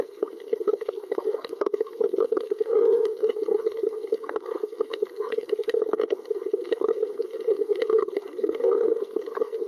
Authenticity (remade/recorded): remade